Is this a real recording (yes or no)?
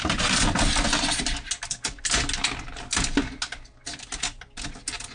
yes